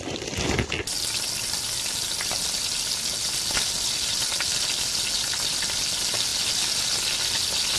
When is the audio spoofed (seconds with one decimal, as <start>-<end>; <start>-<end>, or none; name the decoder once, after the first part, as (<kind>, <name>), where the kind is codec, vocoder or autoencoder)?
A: none